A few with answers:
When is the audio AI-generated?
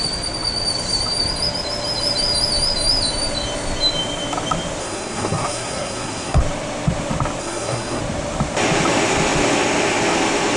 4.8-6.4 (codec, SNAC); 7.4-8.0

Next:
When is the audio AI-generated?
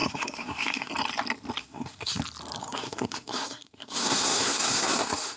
0.0-0.9 (codec, SNAC); 1.6-2.2; 2.6-5.4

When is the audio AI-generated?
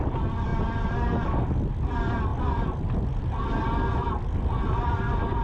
none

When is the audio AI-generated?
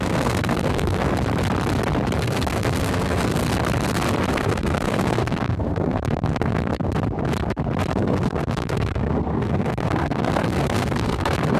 0.0-1.1 (codec, SNAC); 2.2-3.4; 4.3-6.8; 7.9-11.6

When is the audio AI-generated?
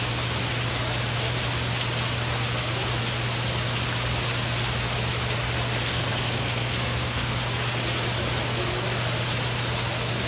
5.8-7.4 (codec, SNAC)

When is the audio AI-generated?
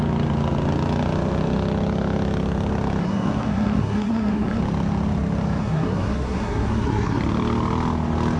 3.0-4.6 (codec, SNAC); 5.6-7.2